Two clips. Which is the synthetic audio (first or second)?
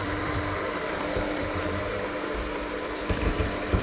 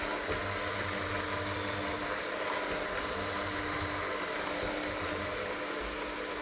first